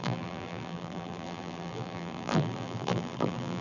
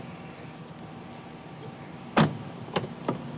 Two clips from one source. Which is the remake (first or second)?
first